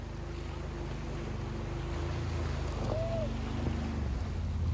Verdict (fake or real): real